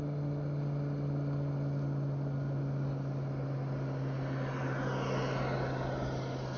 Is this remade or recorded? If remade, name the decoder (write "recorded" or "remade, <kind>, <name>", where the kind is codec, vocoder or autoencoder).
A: recorded